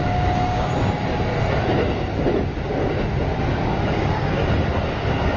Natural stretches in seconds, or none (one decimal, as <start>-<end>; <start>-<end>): 0.7-3.9; 4.4-5.4